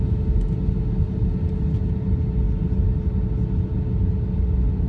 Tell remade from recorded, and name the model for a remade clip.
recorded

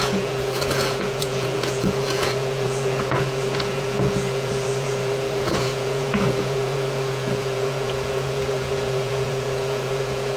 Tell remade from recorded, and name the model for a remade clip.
remade, vocoder, Vocos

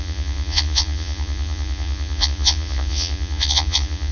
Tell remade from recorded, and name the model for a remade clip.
remade, vocoder, Vocos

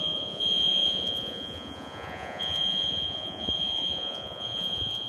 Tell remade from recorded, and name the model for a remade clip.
remade, vocoder, Vocos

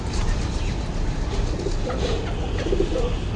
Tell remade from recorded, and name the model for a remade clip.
recorded